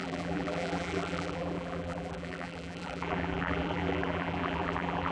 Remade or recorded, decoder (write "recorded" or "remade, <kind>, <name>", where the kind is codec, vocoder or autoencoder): remade, vocoder, BigVGAN v2